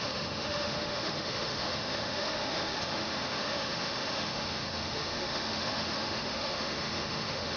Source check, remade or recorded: remade